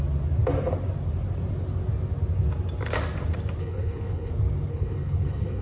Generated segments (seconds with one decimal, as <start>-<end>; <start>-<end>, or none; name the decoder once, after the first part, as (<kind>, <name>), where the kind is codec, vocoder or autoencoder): 3.6-4.3 (codec, HILCodec); 4.7-5.6